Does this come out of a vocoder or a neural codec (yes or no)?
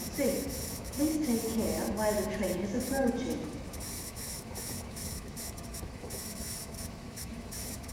yes